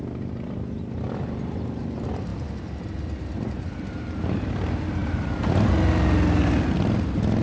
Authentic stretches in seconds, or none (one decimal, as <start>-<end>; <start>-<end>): 0.0-7.4